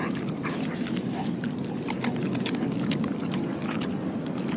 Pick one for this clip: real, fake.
real